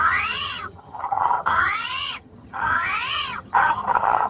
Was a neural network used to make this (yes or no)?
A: yes